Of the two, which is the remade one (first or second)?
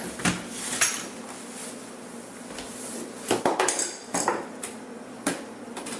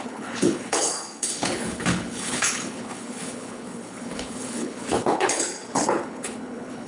second